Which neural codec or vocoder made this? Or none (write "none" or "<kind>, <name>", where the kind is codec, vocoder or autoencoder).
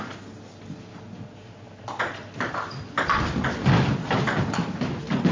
none